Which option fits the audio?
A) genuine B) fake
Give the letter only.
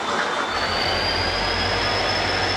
A